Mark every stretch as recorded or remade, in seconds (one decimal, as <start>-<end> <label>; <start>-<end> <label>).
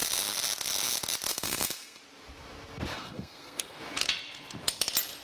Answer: 0.0-1.3 recorded; 1.3-2.0 remade; 2.0-2.9 recorded; 2.9-3.8 remade; 3.8-5.2 recorded